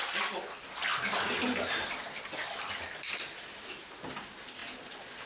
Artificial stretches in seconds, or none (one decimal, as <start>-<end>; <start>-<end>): none